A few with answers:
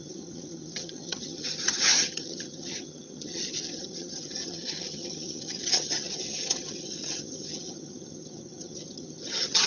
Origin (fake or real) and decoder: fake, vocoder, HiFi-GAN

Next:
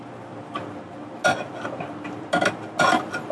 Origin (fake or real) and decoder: real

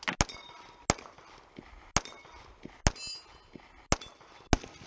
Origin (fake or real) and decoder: real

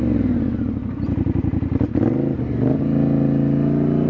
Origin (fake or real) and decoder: real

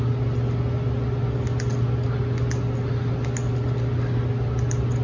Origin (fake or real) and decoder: real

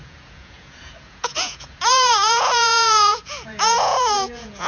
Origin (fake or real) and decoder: fake, vocoder, Vocos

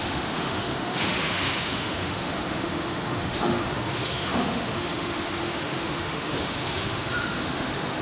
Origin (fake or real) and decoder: fake, autoencoder, DAC-VAE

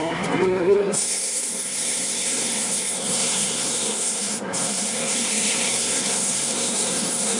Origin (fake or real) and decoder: fake, codec, SNAC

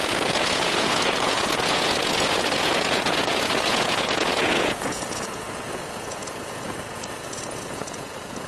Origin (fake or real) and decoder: fake, vocoder, Vocos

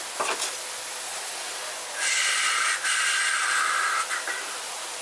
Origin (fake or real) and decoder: real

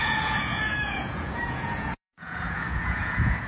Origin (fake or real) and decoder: fake, vocoder, Vocos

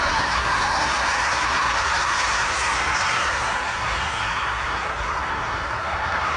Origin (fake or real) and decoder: fake, codec, SNAC